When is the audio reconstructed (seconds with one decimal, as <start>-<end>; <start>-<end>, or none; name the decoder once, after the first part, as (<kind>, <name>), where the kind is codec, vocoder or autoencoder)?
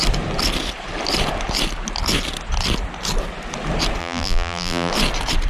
4.0-4.9 (vocoder, BigVGAN v2)